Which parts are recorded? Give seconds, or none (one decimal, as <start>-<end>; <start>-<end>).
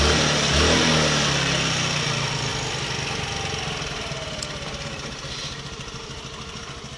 0.0-7.0